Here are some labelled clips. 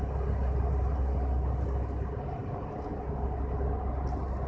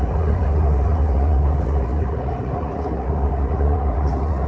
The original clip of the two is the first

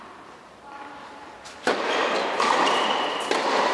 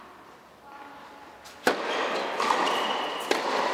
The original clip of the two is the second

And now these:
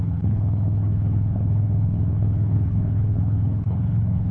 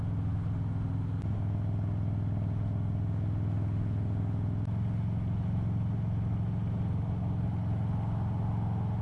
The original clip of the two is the second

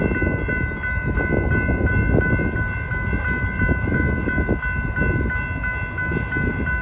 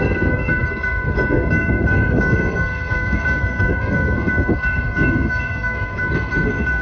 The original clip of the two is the first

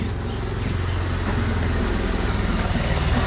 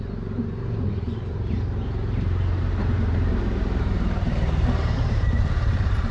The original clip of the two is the first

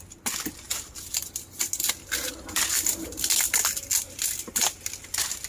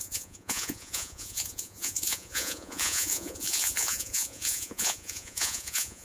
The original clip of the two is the first